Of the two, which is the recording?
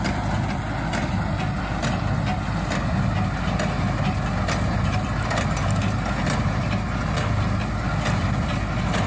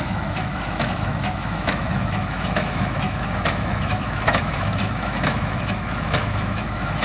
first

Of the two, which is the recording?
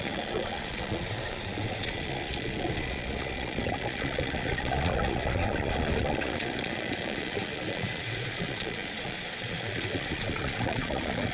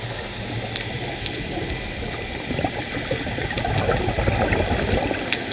second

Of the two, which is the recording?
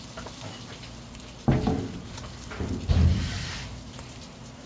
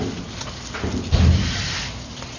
first